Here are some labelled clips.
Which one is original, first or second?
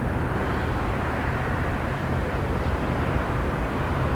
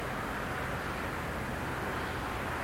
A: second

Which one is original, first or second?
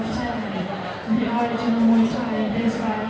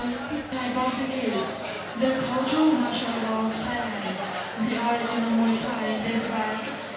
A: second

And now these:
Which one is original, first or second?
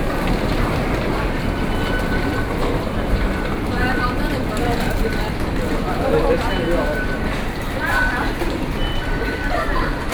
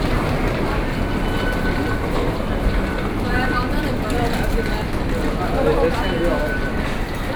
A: second